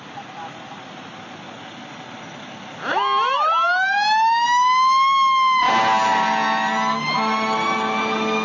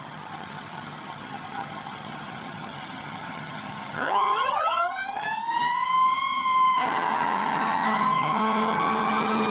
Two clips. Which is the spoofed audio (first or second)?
second